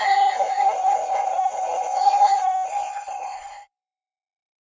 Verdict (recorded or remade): remade